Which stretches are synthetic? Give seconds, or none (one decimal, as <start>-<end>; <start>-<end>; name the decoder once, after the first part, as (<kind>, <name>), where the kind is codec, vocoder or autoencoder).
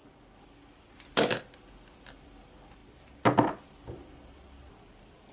none